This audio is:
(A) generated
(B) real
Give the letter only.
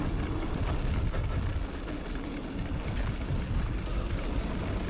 B